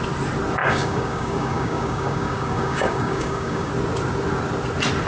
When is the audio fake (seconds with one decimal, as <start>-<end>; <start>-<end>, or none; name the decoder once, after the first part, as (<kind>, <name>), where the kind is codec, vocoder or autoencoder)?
0.6-3.7 (codec, DAC)